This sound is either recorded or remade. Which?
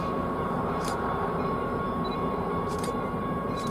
remade